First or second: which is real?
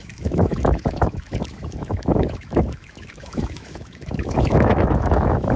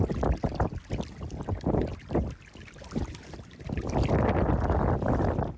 second